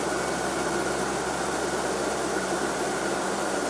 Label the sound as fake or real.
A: real